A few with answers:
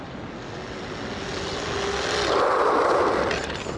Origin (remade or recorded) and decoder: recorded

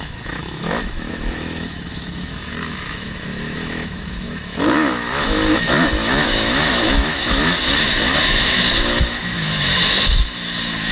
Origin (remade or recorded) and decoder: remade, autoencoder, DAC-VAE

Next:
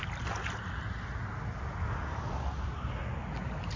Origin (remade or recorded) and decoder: recorded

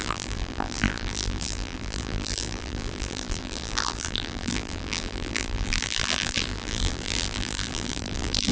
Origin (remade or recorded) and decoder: remade, vocoder, BigVGAN v2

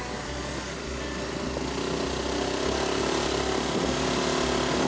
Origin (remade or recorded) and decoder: recorded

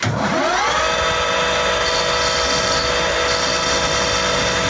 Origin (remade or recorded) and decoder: recorded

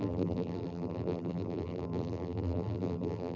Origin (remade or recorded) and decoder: remade, vocoder, BigVGAN v2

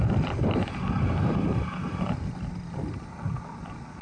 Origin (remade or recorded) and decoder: recorded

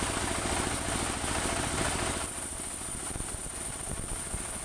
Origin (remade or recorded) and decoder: recorded